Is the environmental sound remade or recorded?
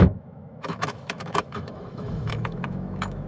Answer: remade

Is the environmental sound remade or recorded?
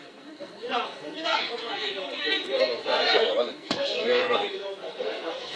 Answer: remade